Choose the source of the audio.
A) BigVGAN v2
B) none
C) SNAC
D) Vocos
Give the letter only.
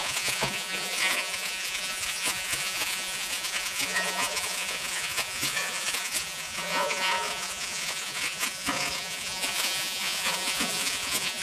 D